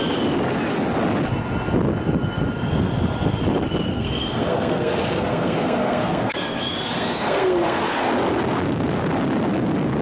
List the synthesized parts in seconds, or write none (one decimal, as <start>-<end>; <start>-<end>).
3.9-8.1